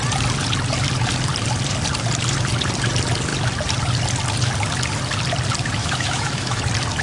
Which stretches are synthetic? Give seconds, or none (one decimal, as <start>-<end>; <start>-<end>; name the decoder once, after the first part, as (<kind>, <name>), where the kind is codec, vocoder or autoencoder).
5.8-6.6 (autoencoder, DAC-VAE)